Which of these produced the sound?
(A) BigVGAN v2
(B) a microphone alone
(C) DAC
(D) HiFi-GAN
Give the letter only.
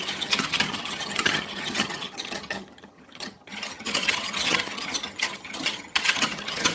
D